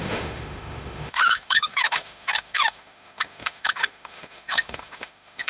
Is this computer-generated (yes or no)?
yes